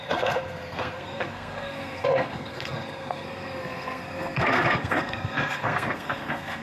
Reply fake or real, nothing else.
fake